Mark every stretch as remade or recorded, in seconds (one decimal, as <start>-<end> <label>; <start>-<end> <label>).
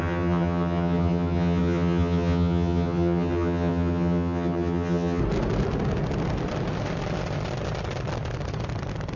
0.0-5.2 remade; 5.2-9.2 recorded